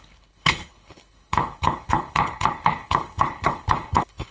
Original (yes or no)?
no